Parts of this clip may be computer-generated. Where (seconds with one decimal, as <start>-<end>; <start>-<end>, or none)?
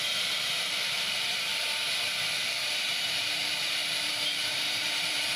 0.0-1.5; 2.4-5.4